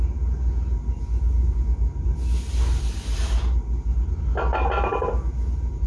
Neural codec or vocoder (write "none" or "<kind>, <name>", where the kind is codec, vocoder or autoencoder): none